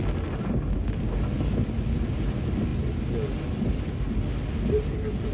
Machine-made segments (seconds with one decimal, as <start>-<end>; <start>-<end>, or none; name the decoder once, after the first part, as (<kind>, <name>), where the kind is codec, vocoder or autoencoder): none